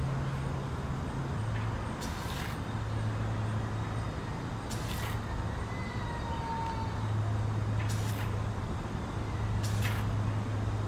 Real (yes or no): yes